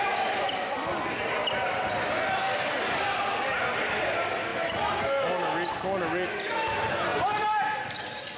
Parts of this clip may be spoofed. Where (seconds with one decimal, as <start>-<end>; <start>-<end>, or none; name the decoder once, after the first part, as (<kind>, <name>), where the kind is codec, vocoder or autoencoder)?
7.1-8.4 (vocoder, BigVGAN v2)